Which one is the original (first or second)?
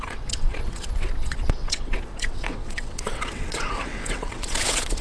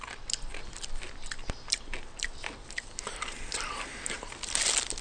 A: second